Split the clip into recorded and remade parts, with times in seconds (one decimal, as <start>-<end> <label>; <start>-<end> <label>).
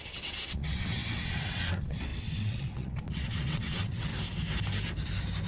0.0-4.1 remade; 4.1-5.5 recorded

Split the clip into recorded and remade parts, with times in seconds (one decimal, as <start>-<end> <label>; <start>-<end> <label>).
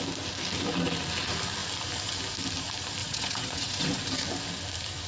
0.0-3.0 recorded; 3.0-4.0 remade; 4.0-5.1 recorded